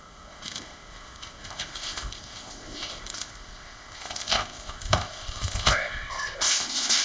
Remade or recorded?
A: remade